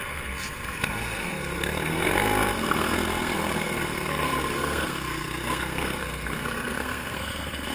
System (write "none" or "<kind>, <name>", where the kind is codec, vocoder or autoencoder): codec, SNAC